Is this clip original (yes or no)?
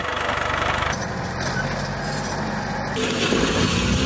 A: yes